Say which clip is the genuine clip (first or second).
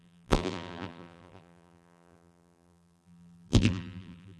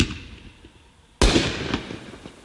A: second